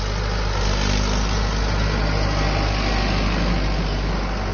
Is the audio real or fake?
real